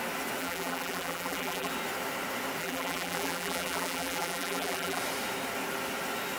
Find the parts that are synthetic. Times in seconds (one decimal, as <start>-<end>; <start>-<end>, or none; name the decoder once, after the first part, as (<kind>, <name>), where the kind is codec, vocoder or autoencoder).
0.4-1.7 (vocoder, BigVGAN v2); 2.6-5.0